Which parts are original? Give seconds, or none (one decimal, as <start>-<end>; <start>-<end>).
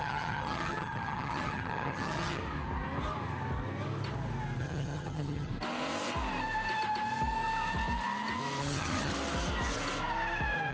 2.4-4.6; 5.5-8.6; 9.1-10.7